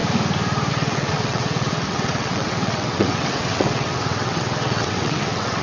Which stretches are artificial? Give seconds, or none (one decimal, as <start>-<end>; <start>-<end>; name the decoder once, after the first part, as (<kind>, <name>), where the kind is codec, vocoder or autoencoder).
0.7-5.6 (vocoder, WaveNeXt)